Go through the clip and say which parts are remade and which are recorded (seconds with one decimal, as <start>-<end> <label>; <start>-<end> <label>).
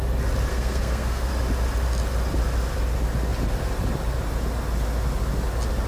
0.0-0.5 recorded; 0.5-1.3 remade; 1.3-5.9 recorded